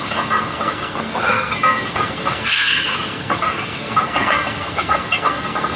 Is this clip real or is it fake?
fake